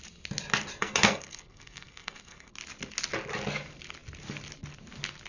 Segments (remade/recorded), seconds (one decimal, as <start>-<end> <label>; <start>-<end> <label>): 0.0-0.8 recorded; 0.8-2.5 remade; 2.5-5.3 recorded